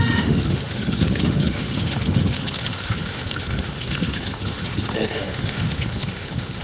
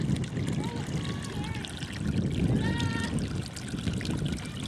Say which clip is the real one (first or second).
second